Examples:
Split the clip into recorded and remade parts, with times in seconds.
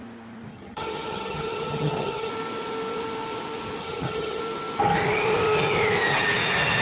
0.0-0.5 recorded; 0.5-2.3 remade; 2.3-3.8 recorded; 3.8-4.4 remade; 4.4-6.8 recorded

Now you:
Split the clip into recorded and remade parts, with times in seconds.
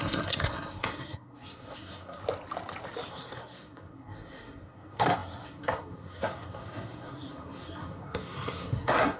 0.0-2.2 remade; 2.2-3.1 recorded; 3.1-9.2 remade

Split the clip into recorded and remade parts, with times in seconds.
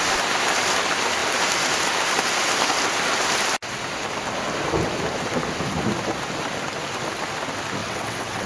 0.0-7.8 recorded; 7.8-8.5 remade